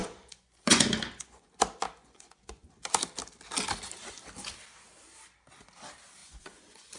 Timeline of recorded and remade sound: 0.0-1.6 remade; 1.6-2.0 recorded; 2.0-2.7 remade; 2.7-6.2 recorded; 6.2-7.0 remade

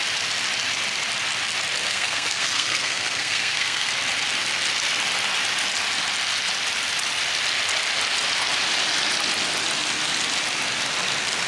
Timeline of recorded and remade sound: 0.0-1.9 recorded; 1.9-3.9 remade; 3.9-11.5 recorded

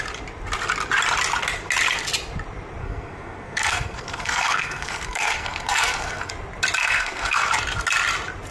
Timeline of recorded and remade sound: 0.0-2.8 recorded; 2.8-6.3 remade; 6.3-6.8 recorded; 6.8-7.5 remade; 7.5-8.5 recorded

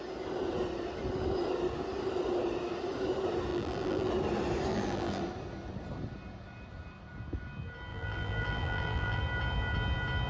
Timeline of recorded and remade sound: 0.0-3.5 recorded; 3.5-4.1 remade; 4.1-4.7 recorded; 4.7-5.2 remade; 5.2-7.9 recorded; 7.9-9.2 remade; 9.2-10.3 recorded

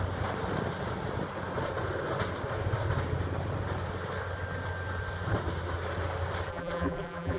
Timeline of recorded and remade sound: 0.0-6.5 recorded; 6.5-7.4 remade

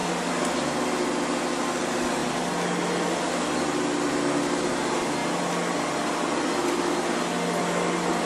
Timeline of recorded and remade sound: 0.0-8.3 recorded

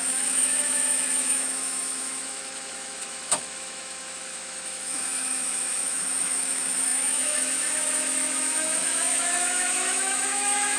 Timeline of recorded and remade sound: 0.0-10.8 remade